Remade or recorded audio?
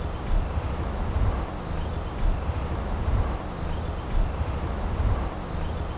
recorded